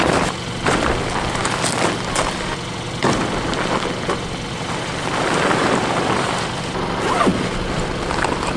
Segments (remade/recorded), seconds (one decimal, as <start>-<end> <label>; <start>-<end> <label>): 0.0-8.6 recorded